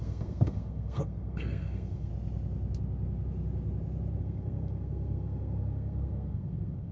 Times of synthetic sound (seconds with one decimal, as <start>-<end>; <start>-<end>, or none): 0.0-2.1; 4.2-6.9

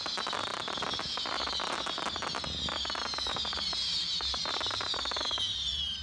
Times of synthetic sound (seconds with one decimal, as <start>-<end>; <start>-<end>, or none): none

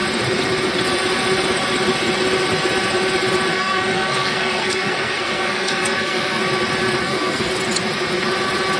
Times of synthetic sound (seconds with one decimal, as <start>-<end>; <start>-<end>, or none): 3.5-6.4; 7.0-7.5